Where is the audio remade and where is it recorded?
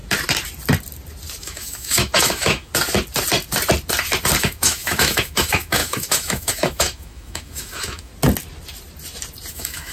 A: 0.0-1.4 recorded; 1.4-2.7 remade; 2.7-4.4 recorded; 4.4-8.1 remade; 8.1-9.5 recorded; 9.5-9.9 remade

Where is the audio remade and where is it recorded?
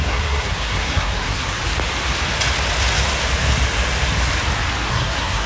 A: 0.0-1.6 remade; 1.6-4.9 recorded; 4.9-5.5 remade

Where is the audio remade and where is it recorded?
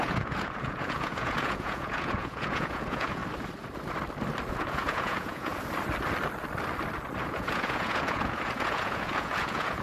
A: 0.0-3.2 remade; 3.2-4.5 recorded; 4.5-5.5 remade; 5.5-7.2 recorded; 7.2-9.8 remade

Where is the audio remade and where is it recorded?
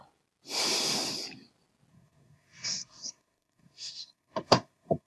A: 0.0-1.9 recorded; 1.9-5.1 remade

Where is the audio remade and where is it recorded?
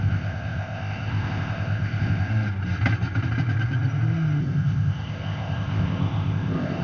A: 0.0-2.3 remade; 2.3-4.4 recorded; 4.4-6.8 remade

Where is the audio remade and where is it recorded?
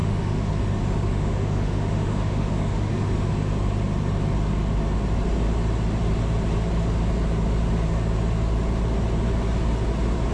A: 0.0-0.5 remade; 0.5-1.1 recorded; 1.1-2.9 remade; 2.9-10.3 recorded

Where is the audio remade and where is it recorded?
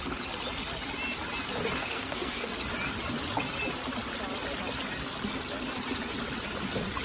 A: 0.0-1.8 recorded; 1.8-2.5 remade; 2.5-7.0 recorded